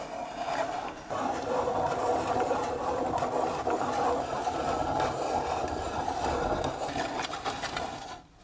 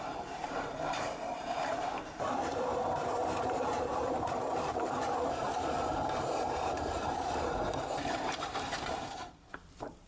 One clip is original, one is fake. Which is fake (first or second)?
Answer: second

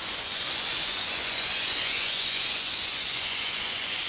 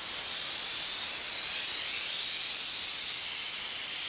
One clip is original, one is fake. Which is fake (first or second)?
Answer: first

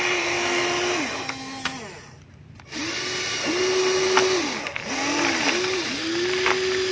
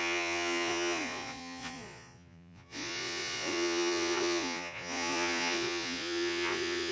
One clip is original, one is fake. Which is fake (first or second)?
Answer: second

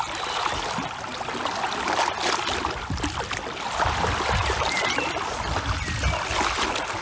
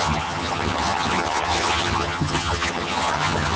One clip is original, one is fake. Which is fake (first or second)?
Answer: second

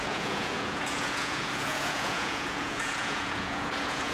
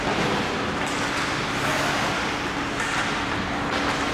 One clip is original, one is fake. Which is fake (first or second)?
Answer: first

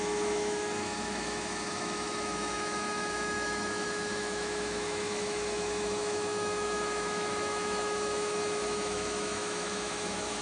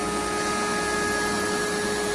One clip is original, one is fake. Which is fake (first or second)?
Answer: first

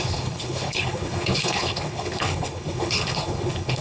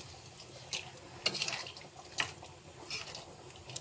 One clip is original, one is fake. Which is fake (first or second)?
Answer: first